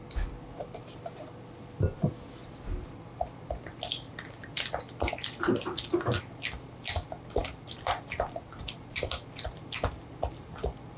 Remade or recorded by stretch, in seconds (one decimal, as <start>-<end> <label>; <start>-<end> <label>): 0.0-11.0 recorded